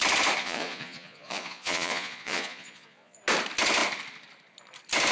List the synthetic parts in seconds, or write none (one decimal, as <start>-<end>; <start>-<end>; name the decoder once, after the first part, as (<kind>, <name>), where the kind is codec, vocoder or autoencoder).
0.4-3.2 (vocoder, Vocos)